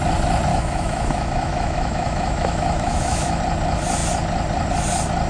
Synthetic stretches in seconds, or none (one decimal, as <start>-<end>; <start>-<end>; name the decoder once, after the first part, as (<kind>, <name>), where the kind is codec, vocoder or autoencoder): 0.5-3.4 (autoencoder, DAC-VAE)

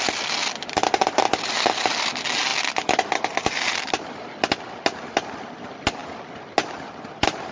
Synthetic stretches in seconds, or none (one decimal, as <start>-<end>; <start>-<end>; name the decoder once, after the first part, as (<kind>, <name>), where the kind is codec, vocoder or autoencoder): none

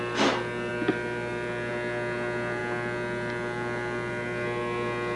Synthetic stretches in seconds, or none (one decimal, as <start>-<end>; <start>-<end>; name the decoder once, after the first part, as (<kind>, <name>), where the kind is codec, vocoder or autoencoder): none

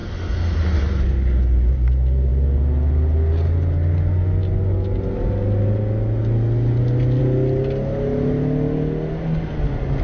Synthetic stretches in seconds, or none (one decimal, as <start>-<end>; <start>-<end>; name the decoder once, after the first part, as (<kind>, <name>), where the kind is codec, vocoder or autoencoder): none

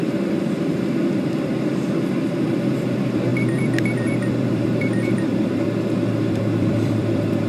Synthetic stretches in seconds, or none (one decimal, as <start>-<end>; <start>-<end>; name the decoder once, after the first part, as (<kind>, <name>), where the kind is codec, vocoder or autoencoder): 0.0-7.5 (vocoder, BigVGAN v2)

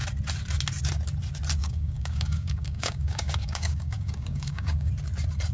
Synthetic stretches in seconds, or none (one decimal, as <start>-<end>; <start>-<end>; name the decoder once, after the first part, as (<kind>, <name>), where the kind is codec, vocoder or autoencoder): 1.6-4.9 (codec, DAC)